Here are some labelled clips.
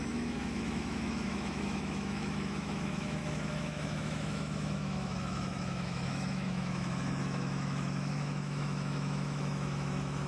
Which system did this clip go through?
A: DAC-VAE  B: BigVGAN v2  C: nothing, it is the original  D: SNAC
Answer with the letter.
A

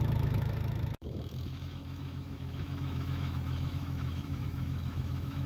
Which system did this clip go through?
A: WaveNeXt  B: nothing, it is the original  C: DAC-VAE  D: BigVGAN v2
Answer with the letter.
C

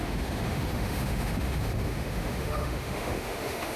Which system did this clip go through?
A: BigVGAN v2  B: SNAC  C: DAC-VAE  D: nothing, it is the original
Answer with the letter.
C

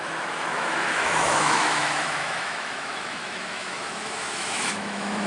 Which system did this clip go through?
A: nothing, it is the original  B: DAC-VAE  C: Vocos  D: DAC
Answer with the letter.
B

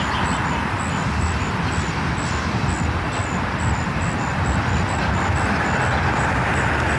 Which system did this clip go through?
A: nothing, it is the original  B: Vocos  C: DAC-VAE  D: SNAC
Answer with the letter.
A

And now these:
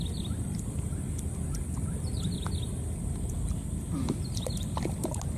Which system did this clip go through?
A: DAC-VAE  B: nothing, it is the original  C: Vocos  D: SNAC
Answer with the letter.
B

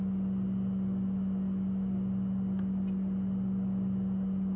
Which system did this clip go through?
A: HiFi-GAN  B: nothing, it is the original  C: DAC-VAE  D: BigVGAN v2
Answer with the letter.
B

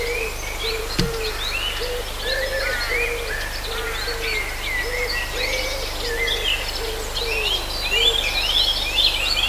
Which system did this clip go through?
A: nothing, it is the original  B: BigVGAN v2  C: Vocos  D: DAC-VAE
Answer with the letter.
A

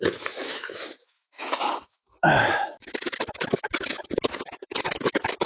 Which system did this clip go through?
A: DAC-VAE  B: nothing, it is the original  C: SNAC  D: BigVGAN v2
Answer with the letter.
A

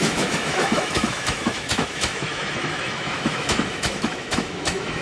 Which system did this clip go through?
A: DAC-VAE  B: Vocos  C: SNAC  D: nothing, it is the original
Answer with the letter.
A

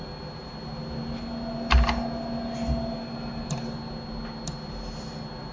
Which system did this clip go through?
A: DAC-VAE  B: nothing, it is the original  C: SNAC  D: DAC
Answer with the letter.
B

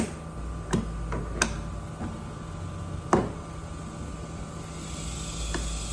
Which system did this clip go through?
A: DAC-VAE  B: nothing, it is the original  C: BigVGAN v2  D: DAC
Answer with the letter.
B